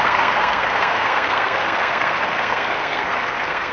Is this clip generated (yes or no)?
yes